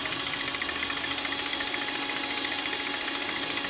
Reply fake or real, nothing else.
real